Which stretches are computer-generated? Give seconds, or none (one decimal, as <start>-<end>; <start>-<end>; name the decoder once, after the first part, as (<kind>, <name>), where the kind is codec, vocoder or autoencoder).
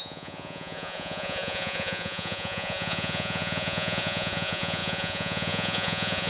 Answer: 0.0-6.3 (vocoder, Vocos)